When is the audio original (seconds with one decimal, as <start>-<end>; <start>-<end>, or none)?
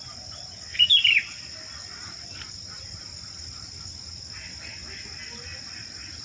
0.0-6.2